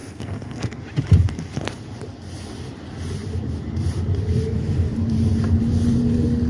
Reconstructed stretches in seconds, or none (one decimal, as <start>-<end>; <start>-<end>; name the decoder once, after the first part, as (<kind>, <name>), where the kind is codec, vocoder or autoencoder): 0.0-0.8 (codec, SNAC)